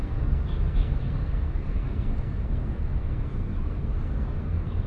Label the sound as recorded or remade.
remade